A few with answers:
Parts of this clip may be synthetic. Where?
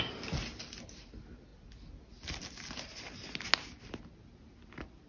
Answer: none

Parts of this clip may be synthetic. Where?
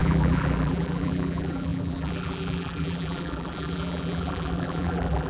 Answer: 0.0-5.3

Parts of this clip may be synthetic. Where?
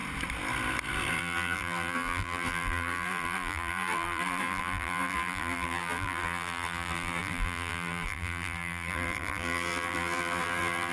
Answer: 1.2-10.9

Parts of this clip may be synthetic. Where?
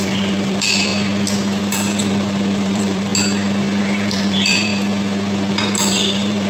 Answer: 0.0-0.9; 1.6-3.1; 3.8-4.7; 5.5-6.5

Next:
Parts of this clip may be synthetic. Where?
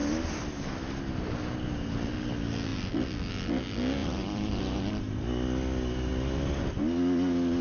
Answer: 4.0-4.6; 6.1-6.8